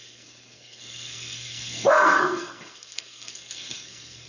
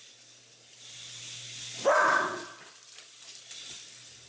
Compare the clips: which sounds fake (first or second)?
first